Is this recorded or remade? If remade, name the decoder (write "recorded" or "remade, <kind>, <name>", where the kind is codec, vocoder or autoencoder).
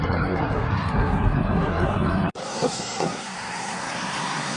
remade, codec, SNAC